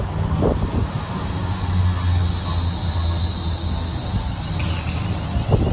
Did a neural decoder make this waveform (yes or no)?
no